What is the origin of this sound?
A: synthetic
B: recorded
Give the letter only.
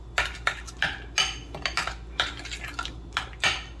B